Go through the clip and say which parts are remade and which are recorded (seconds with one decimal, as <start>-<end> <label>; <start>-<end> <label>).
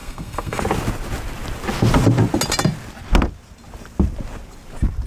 0.0-0.6 remade; 0.6-5.1 recorded